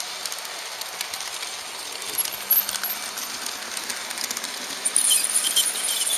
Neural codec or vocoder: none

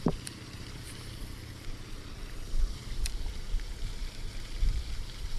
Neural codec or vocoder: vocoder, BigVGAN v2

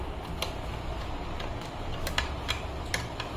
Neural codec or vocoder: none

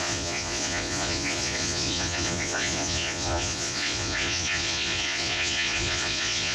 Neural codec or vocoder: vocoder, Vocos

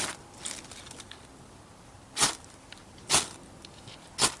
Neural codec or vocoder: none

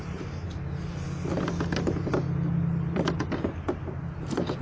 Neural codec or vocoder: none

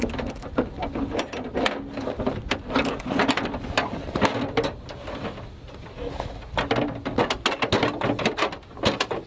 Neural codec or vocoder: none